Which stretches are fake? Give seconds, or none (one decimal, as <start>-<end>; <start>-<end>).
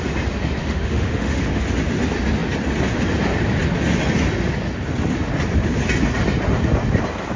0.6-1.6